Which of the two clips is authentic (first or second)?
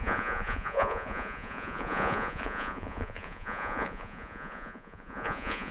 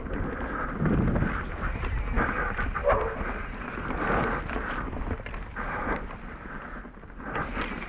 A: second